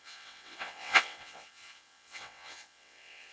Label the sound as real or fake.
fake